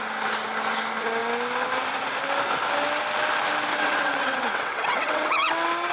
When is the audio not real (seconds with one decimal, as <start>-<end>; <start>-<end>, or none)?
3.7-5.5